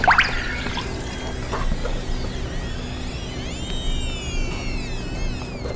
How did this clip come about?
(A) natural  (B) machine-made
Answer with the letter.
A